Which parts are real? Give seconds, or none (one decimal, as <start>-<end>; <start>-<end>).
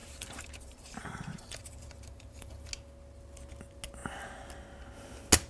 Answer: 2.7-5.5